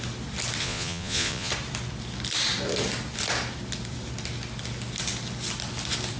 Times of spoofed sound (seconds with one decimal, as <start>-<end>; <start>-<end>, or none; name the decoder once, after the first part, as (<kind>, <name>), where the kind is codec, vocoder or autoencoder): 0.6-1.5 (vocoder, Vocos)